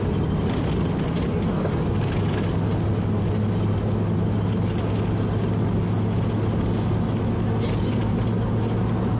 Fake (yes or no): no